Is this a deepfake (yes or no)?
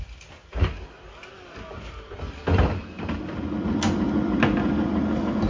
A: no